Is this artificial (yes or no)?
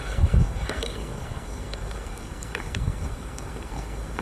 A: yes